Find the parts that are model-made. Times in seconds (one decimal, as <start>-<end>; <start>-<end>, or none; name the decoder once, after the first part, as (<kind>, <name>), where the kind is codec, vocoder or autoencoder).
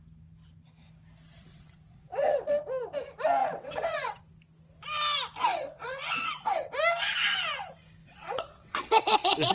1.5-2.5 (vocoder, WaveNeXt); 3.4-4.2; 5.5-6.7; 8.0-9.5